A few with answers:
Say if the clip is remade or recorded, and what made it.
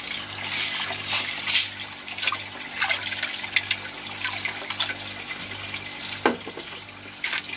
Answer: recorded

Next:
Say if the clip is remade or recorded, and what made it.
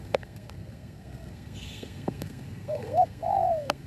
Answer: remade, codec, SNAC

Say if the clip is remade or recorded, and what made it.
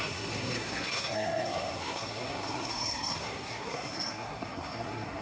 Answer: remade, codec, SNAC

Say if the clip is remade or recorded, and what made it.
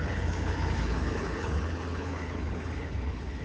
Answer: remade, codec, HILCodec